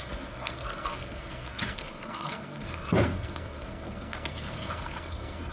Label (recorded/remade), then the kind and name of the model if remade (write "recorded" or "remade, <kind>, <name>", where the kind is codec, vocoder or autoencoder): remade, codec, SNAC